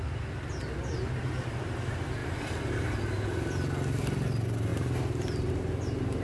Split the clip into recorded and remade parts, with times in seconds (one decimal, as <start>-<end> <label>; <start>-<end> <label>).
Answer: 0.0-6.2 recorded